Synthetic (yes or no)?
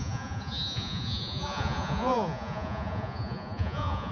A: yes